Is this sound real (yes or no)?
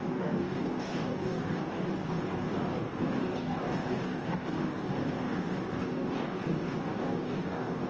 no